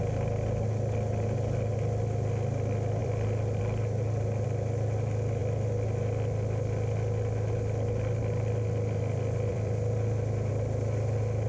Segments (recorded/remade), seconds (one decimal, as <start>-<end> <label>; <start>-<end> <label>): 0.0-3.0 recorded; 3.0-3.6 remade; 3.6-9.5 recorded; 9.5-10.5 remade; 10.5-11.5 recorded